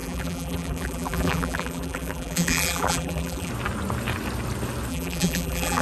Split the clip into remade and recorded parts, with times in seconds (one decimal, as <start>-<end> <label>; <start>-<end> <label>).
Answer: 0.0-3.5 remade; 3.5-4.9 recorded; 4.9-5.8 remade